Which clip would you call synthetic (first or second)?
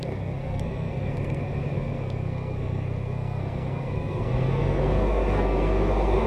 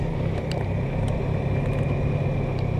first